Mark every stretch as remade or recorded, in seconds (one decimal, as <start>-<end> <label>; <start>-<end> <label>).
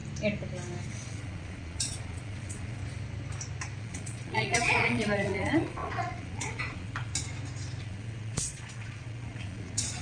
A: 0.0-0.9 recorded; 0.9-2.8 remade; 2.8-3.8 recorded; 3.8-7.1 remade; 7.1-7.8 recorded; 7.8-10.0 remade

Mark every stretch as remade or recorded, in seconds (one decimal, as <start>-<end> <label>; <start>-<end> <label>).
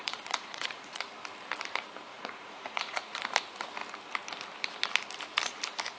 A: 0.0-1.0 remade; 1.0-2.1 recorded; 2.1-3.2 remade; 3.2-6.0 recorded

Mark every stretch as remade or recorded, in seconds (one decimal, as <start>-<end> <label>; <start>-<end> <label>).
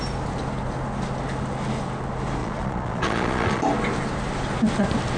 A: 0.0-2.4 recorded; 2.4-3.6 remade; 3.6-5.2 recorded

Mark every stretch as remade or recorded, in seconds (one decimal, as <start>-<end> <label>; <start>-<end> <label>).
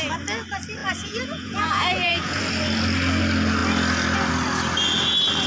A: 0.0-0.8 recorded; 0.8-2.4 remade; 2.4-5.5 recorded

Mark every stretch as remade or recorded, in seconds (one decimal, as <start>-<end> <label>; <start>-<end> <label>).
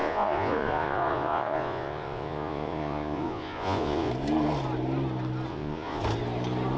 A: 0.0-4.1 remade; 4.1-5.5 recorded; 5.5-6.0 remade; 6.0-6.8 recorded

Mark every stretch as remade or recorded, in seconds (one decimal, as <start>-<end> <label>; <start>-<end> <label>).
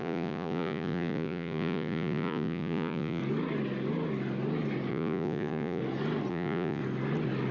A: 0.0-3.2 remade; 3.2-4.9 recorded; 4.9-5.8 remade; 5.8-6.3 recorded; 6.3-6.8 remade; 6.8-7.5 recorded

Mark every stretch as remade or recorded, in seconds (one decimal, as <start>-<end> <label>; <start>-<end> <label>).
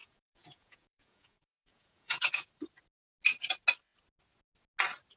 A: 0.0-2.5 remade; 2.5-5.2 recorded